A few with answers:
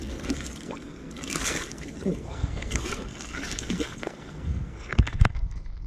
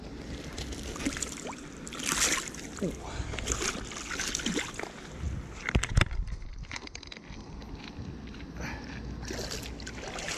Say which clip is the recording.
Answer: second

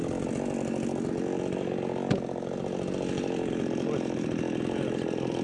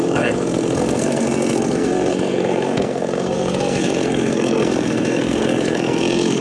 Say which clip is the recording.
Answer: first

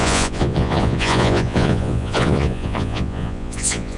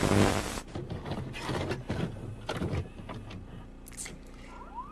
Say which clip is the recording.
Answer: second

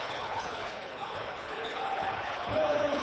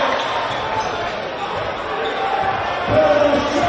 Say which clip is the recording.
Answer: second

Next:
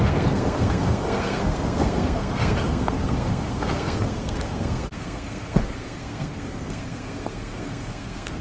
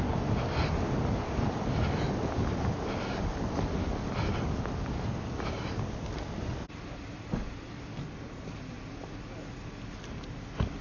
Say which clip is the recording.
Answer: second